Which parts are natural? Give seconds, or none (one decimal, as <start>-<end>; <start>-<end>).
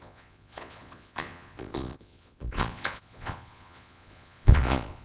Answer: none